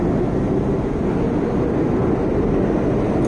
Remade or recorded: recorded